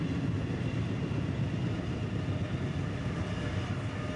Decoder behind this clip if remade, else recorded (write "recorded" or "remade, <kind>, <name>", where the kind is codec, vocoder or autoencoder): recorded